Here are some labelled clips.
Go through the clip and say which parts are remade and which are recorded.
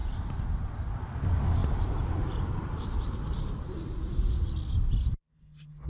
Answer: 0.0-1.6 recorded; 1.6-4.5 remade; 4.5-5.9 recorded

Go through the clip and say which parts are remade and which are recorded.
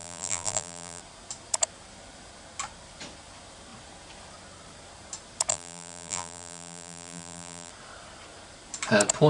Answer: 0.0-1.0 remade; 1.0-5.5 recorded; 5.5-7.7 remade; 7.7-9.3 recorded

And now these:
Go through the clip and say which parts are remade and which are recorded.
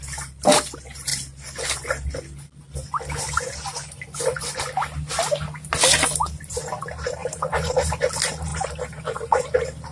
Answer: 0.0-7.2 recorded; 7.2-8.0 remade; 8.0-8.5 recorded; 8.5-9.4 remade; 9.4-9.9 recorded